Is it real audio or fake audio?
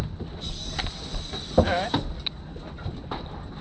real